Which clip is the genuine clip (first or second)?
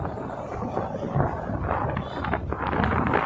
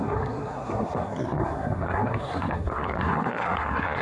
first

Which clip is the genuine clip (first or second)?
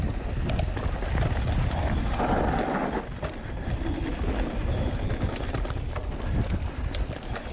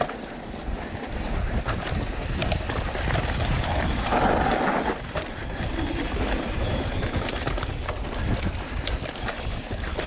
first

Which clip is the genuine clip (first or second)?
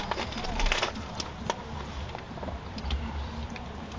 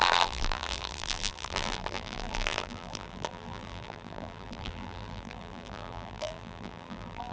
first